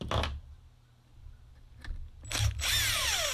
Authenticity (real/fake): real